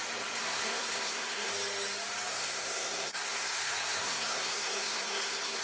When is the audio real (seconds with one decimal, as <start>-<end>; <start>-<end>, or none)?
0.0-0.4; 1.5-2.3